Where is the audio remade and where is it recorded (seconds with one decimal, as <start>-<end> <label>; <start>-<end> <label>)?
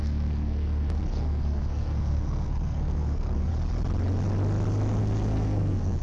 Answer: 0.0-3.5 remade; 3.5-5.0 recorded; 5.0-6.0 remade